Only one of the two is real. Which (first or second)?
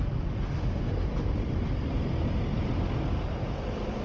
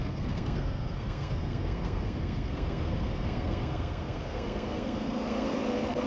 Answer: first